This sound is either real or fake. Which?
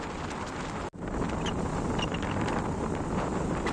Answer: real